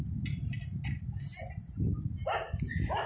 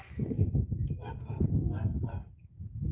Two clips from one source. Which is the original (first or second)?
first